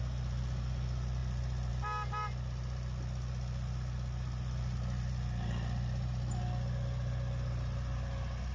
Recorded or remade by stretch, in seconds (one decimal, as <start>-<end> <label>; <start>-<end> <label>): 0.0-8.5 recorded